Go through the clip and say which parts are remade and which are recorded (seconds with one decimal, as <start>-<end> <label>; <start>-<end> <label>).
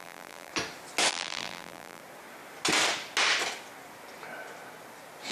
0.0-0.5 remade; 0.5-1.1 recorded; 1.1-2.0 remade; 2.0-5.3 recorded